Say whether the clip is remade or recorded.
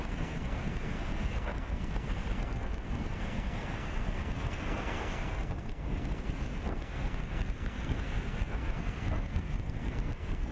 remade